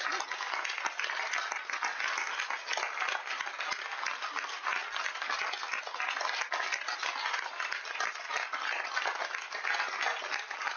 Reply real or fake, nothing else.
real